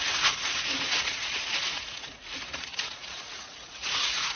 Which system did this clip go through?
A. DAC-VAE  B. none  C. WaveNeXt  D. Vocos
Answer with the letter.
D